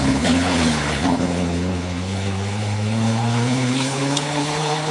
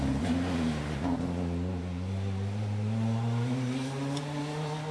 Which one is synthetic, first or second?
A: first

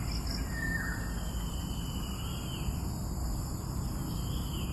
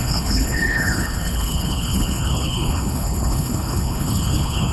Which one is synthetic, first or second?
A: second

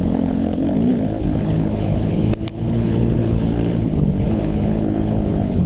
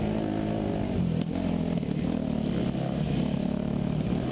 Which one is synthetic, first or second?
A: first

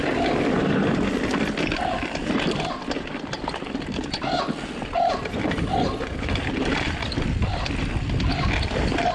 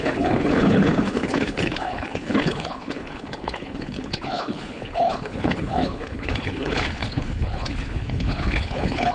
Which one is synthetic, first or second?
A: second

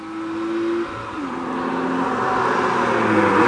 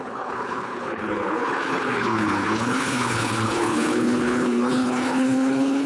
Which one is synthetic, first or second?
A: second